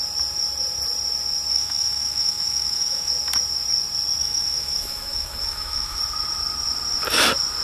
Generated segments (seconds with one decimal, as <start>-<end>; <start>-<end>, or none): 1.5-3.1; 4.2-6.0